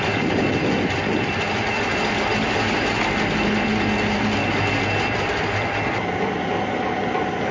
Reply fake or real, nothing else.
real